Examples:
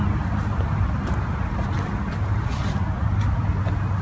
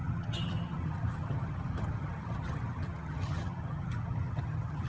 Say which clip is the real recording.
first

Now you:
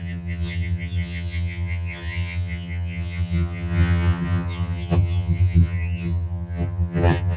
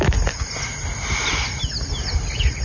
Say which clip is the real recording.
second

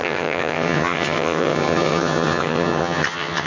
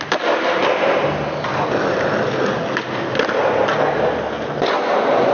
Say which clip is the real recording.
second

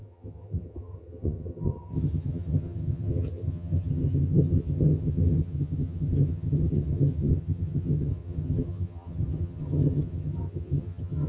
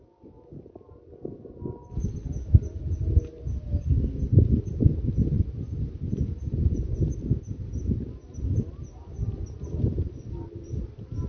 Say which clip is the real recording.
second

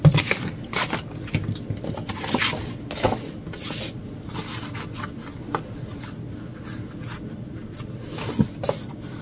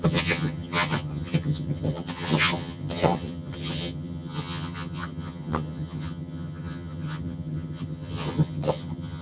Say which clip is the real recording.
first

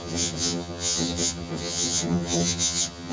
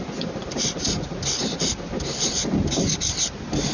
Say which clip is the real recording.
second